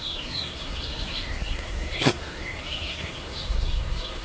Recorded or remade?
remade